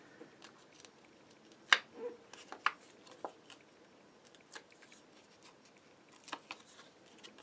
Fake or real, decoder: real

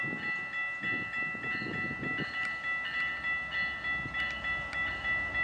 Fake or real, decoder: real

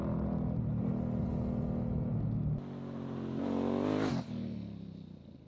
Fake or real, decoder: real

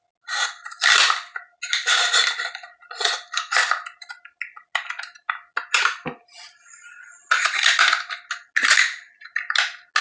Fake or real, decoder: real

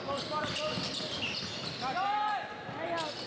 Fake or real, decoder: real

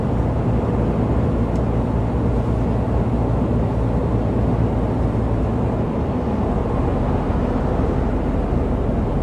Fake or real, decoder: real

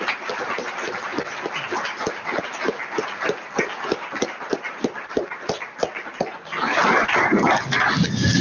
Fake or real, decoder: real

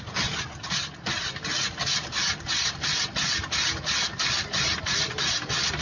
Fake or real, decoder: real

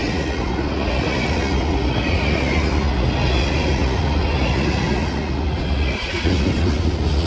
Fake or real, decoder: fake, vocoder, Vocos